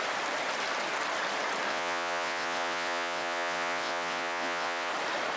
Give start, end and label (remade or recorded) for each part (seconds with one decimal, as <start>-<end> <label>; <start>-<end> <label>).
0.0-1.7 recorded; 1.7-4.9 remade; 4.9-5.4 recorded